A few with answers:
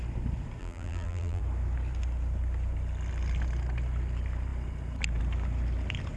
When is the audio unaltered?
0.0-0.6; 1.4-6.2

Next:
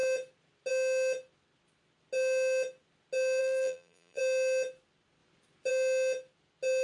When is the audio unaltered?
0.0-3.4; 4.2-6.8